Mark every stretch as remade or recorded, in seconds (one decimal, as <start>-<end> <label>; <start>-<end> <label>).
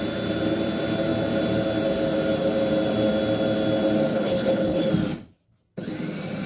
0.0-4.1 recorded; 4.1-4.9 remade; 4.9-6.5 recorded